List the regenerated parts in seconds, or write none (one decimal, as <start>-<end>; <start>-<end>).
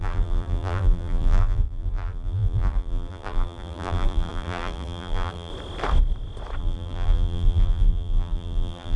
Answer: 0.0-5.5; 6.6-9.0